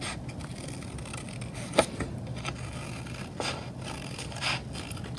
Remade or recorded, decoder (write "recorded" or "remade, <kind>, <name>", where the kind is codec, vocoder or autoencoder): recorded